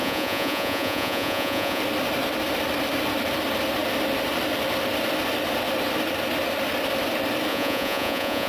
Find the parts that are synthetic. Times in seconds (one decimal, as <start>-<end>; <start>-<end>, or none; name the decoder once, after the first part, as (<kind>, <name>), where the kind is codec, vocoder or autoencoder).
0.0-1.8 (vocoder, Vocos); 7.5-8.5